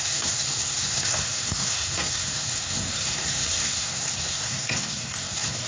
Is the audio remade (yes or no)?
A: yes